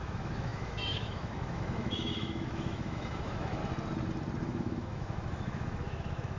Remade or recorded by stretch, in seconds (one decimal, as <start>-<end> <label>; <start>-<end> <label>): 0.0-3.6 remade; 3.6-4.4 recorded; 4.4-6.4 remade